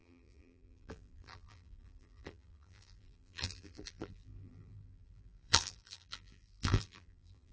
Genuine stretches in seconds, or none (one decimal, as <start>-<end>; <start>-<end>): none